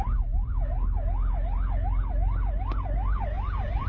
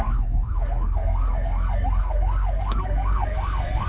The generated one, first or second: second